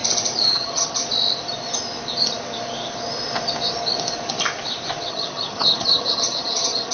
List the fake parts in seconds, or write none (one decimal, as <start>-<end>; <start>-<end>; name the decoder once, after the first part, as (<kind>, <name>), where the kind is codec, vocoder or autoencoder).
0.5-1.0 (vocoder, HiFi-GAN); 5.1-6.9